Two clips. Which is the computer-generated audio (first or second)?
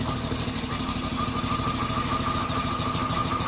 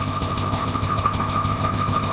second